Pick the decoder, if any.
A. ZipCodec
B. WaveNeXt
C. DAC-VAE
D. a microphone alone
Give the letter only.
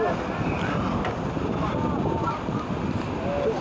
D